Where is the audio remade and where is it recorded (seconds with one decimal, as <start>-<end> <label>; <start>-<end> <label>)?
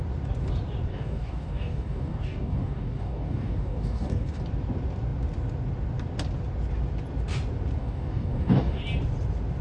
0.0-0.9 recorded; 0.9-4.4 remade; 4.4-7.8 recorded; 7.8-8.8 remade; 8.8-9.6 recorded